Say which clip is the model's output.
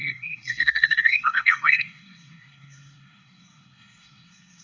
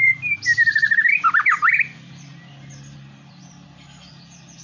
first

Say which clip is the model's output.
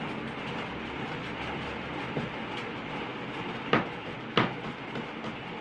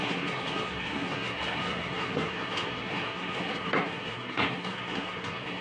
second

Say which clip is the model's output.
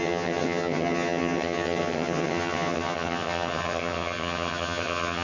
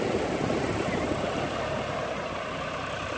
first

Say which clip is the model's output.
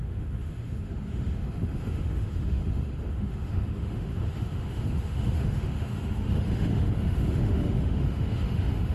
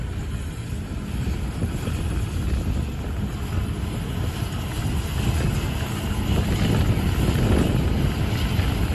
first